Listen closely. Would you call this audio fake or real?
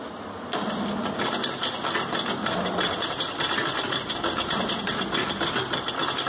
real